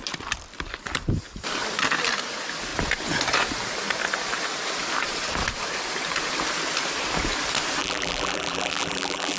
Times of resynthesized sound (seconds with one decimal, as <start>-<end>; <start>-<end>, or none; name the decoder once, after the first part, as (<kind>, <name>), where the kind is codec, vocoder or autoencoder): 7.8-9.4 (vocoder, BigVGAN v2)